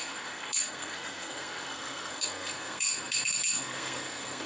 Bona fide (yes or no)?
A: no